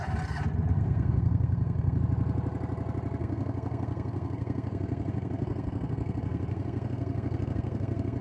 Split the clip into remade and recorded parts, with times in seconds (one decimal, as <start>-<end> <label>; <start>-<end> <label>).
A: 0.0-0.7 recorded; 0.7-2.0 remade; 2.0-3.2 recorded; 3.2-8.2 remade